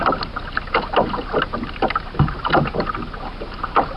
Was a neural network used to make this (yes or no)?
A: no